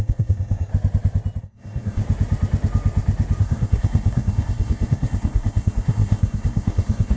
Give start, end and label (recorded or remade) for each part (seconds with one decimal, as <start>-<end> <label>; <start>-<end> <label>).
0.0-0.7 remade; 0.7-1.4 recorded; 1.4-2.0 remade; 2.0-3.4 recorded; 3.4-7.2 remade